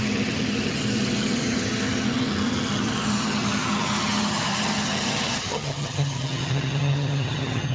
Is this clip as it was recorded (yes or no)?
no